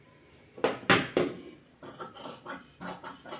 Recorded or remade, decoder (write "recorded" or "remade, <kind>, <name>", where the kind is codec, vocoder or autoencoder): recorded